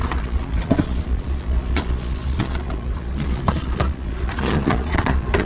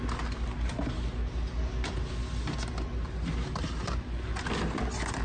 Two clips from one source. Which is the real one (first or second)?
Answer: second